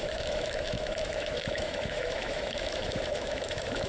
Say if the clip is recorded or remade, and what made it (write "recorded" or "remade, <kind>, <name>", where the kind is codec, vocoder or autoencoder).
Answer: remade, autoencoder, DAC-VAE